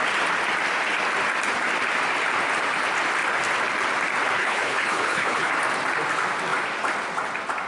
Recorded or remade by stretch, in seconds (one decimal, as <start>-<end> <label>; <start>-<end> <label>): 0.0-4.4 recorded; 4.4-5.5 remade; 5.5-7.7 recorded